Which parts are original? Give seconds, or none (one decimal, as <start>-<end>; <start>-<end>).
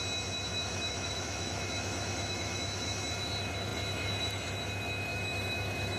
0.0-0.5; 3.1-5.1